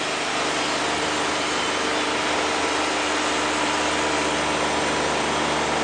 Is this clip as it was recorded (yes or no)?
yes